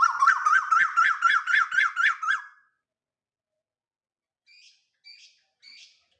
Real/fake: real